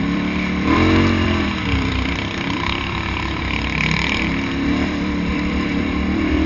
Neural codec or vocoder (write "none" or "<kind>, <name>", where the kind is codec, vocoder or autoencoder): vocoder, BigVGAN v2